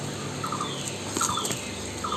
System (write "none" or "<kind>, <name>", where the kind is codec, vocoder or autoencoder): none